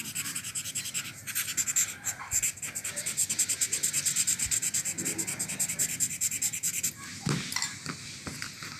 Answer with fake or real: real